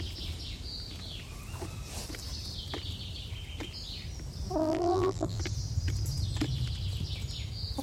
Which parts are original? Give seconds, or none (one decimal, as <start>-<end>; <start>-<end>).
0.0-4.6; 5.4-7.8